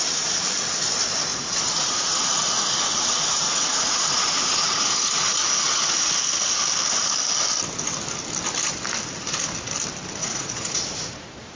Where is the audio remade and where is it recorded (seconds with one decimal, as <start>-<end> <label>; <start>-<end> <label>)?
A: 0.0-1.3 recorded; 1.3-6.1 remade; 6.1-10.2 recorded; 10.2-11.2 remade; 11.2-11.6 recorded